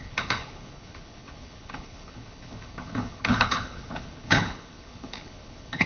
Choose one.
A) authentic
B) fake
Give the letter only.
B